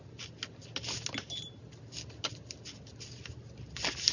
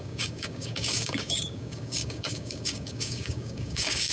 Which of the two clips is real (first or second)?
first